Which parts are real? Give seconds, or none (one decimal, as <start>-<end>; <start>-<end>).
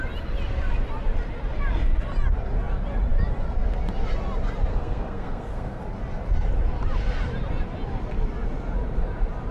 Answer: 0.0-4.7; 5.8-9.5